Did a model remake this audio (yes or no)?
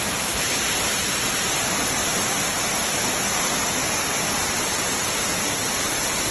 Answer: no